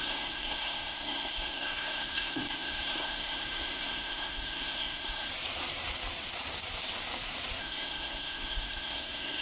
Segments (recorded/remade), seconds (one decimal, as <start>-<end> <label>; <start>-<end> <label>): 0.0-5.3 remade; 5.3-7.6 recorded; 7.6-9.4 remade